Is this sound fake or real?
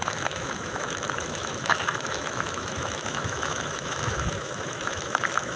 fake